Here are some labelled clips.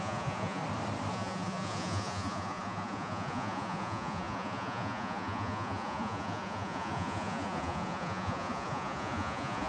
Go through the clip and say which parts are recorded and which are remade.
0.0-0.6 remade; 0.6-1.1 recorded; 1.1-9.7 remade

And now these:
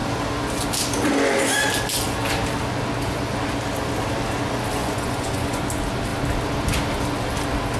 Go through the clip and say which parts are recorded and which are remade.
0.0-4.8 recorded; 4.8-5.6 remade; 5.6-7.8 recorded

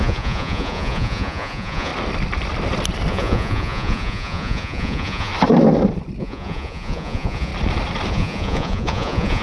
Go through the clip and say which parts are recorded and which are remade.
0.0-1.9 remade; 1.9-3.1 recorded; 3.1-5.3 remade; 5.3-6.2 recorded; 6.2-7.5 remade; 7.5-8.1 recorded; 8.1-9.4 remade

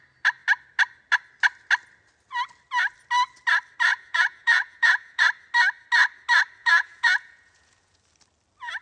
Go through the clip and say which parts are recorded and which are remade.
0.0-3.9 recorded; 3.9-5.2 remade; 5.2-6.6 recorded; 6.6-8.0 remade; 8.0-8.8 recorded

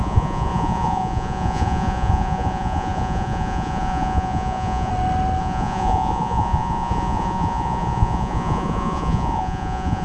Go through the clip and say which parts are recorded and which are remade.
0.0-4.9 remade; 4.9-5.4 recorded; 5.4-10.0 remade

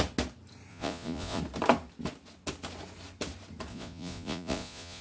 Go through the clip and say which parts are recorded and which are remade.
0.0-0.7 recorded; 0.7-1.4 remade; 1.4-3.7 recorded; 3.7-5.0 remade

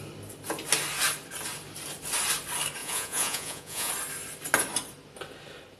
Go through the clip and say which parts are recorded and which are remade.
0.0-2.8 recorded; 2.8-3.9 remade; 3.9-5.8 recorded

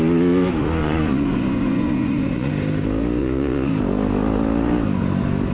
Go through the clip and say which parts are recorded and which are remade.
0.0-0.8 recorded; 0.8-2.5 remade; 2.5-3.2 recorded; 3.2-3.7 remade; 3.7-5.5 recorded